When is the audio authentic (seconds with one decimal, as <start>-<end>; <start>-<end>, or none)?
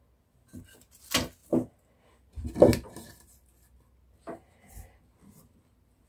0.0-6.1